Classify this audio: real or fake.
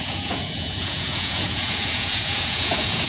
fake